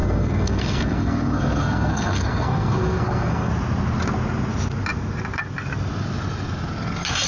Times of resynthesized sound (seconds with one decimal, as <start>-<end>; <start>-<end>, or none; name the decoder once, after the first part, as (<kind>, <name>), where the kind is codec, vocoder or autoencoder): 0.0-3.5 (codec, SNAC)